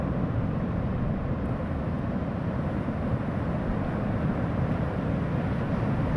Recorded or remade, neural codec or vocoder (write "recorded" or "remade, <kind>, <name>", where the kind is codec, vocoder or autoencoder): recorded